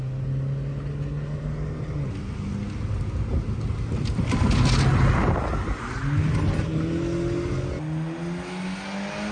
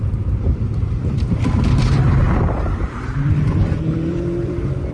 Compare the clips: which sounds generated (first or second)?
second